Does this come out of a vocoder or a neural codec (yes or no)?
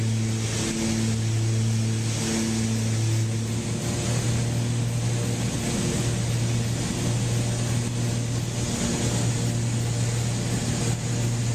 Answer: no